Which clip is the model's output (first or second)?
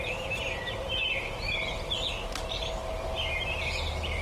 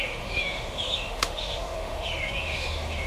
second